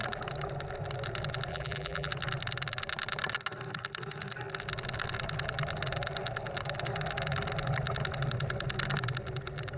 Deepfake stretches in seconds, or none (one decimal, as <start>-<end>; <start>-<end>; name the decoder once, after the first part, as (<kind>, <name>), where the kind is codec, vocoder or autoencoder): 1.5-2.1 (vocoder, BigVGAN v2)